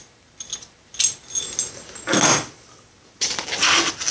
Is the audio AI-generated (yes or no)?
no